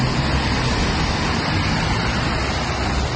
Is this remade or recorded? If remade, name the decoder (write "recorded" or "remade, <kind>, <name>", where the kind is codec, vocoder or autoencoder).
recorded